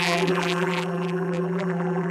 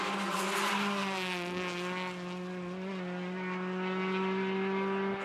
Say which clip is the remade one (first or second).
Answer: first